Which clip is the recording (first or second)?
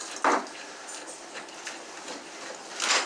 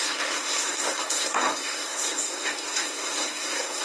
first